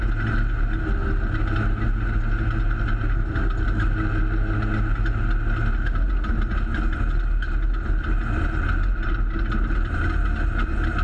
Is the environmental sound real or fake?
real